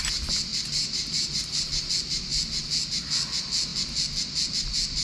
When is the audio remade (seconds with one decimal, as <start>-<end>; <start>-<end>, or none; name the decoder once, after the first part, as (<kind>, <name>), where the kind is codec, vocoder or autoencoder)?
0.5-1.9 (vocoder, BigVGAN v2); 2.3-2.9